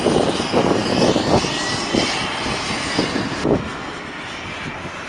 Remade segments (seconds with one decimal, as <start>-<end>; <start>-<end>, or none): none